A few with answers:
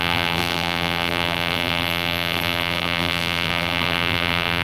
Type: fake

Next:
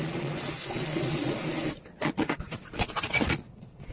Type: fake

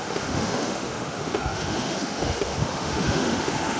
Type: fake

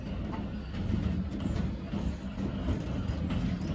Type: real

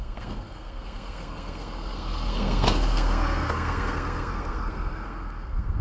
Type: fake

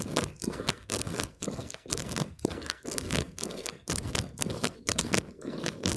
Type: fake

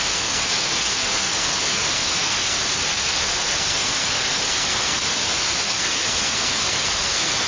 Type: fake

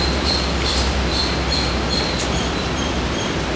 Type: fake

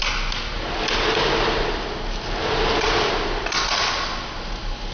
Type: real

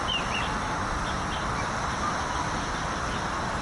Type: real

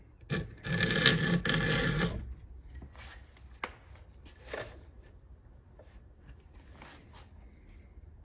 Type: real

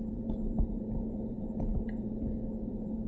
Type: fake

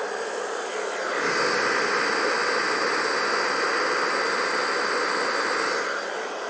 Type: real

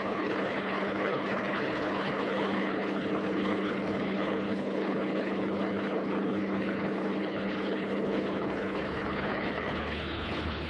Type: fake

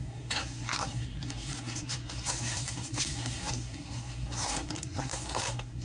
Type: fake